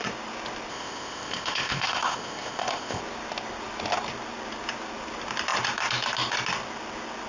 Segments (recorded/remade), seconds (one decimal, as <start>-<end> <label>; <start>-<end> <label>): 0.0-0.7 recorded; 0.7-3.0 remade; 3.0-7.3 recorded